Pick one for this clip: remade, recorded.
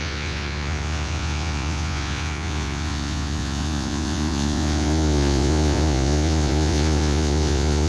remade